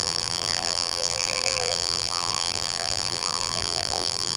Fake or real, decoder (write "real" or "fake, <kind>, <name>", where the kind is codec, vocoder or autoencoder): fake, vocoder, BigVGAN v2